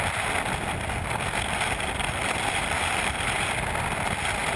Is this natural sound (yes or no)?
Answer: yes